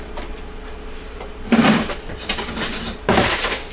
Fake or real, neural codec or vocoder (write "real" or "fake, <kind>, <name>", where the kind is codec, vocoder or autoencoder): fake, vocoder, BigVGAN v2